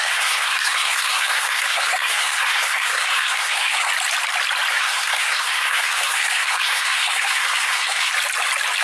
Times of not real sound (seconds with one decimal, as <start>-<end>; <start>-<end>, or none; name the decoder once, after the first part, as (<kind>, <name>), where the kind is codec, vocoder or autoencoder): 0.0-3.9 (codec, SNAC); 4.7-8.1